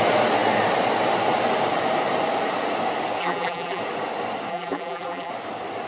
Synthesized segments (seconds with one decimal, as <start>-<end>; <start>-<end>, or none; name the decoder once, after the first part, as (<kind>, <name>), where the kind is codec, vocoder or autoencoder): 3.2-3.8 (vocoder, BigVGAN v2); 4.5-5.3